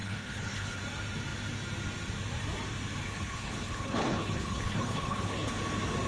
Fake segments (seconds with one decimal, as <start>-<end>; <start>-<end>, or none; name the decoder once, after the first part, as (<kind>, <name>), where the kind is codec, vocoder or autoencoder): 0.0-0.8 (codec, HILCodec); 3.0-5.5